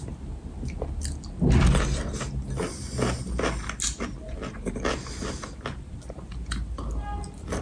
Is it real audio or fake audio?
real